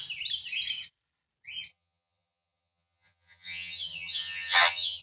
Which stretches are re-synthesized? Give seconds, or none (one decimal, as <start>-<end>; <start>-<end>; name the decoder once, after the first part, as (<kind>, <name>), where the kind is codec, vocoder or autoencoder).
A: 1.7-5.0 (vocoder, HiFi-GAN)